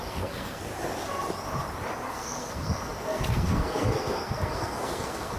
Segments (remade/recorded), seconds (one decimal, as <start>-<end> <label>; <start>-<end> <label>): 0.0-0.7 remade; 0.7-2.1 recorded; 2.1-5.4 remade